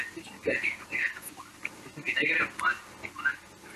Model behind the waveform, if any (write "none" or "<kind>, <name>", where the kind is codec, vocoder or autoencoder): none